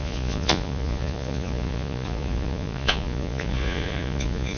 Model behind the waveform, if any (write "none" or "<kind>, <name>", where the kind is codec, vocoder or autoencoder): vocoder, Vocos